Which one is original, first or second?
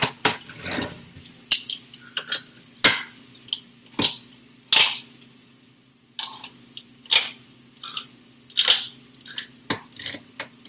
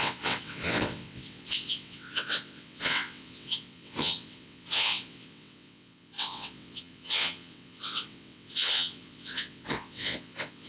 first